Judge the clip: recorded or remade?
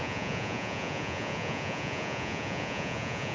remade